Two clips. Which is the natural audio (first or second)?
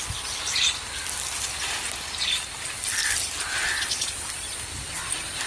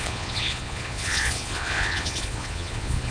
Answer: first